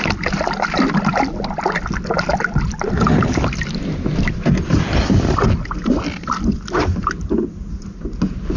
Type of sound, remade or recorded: recorded